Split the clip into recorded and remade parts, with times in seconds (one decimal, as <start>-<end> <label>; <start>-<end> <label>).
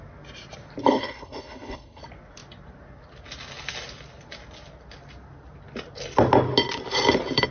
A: 0.0-0.8 recorded; 0.8-2.0 remade; 2.0-7.5 recorded